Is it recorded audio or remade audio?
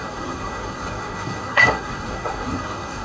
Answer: remade